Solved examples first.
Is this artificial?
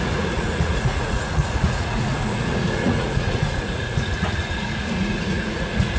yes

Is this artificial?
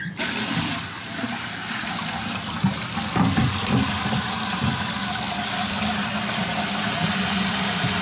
no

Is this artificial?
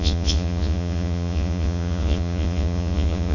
yes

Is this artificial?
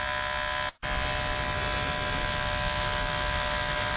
no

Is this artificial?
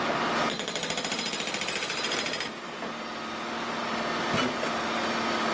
no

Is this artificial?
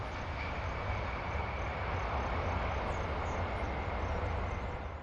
no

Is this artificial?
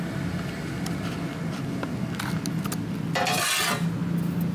no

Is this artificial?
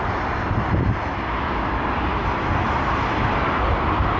no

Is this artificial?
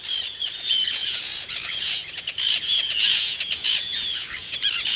yes